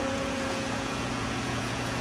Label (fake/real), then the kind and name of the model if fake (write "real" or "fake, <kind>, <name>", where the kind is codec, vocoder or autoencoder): fake, vocoder, Vocos